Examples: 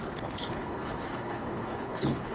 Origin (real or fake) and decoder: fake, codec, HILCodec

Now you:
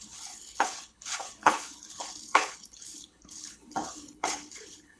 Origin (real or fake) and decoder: fake, codec, HILCodec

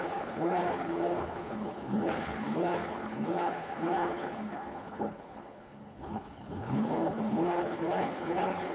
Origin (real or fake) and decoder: fake, codec, HILCodec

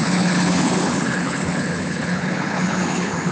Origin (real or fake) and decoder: fake, codec, HILCodec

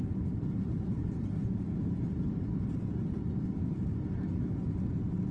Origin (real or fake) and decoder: real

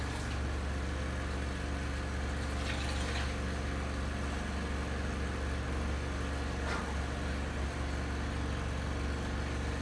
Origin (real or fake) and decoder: real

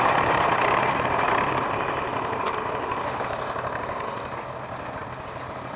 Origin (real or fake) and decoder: real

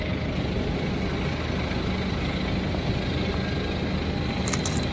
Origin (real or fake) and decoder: real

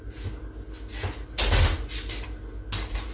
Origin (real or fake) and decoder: real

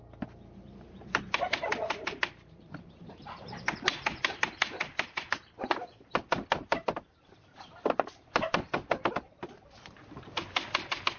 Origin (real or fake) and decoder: real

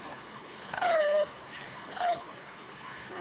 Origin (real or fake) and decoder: fake, codec, HILCodec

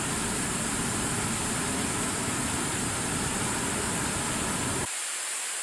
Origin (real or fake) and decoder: real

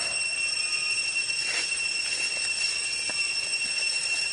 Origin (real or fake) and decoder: real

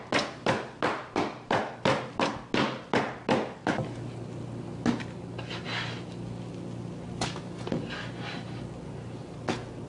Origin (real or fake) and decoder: real